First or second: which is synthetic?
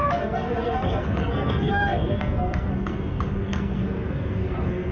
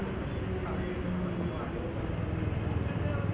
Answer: first